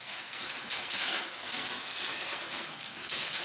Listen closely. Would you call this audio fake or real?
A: fake